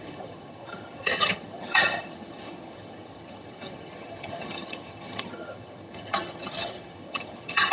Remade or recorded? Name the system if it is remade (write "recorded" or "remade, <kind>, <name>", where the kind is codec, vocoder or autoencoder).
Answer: remade, vocoder, HiFi-GAN